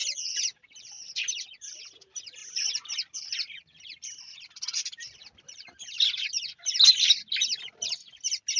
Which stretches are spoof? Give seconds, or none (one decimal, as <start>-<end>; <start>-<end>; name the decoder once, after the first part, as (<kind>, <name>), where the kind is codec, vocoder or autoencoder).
none